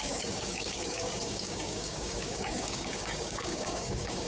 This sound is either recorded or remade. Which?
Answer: remade